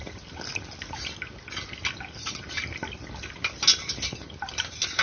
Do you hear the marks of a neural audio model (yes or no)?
no